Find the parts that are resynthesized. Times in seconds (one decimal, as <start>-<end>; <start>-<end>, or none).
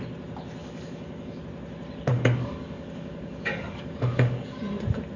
0.6-1.4; 2.1-4.6